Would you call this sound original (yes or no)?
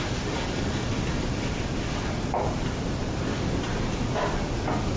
yes